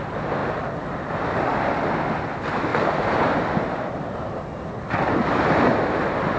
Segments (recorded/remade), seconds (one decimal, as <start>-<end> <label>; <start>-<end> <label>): 0.0-2.7 recorded; 2.7-4.4 remade; 4.4-5.7 recorded; 5.7-6.4 remade

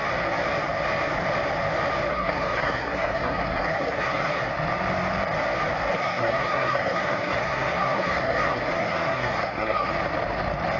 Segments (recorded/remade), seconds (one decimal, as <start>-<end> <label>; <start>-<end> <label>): 0.0-2.1 recorded; 2.1-4.5 remade; 4.5-5.9 recorded; 5.9-9.9 remade; 9.9-10.8 recorded

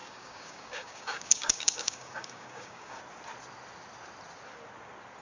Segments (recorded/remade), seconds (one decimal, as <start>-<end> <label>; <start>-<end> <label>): 0.0-3.0 remade; 3.0-5.2 recorded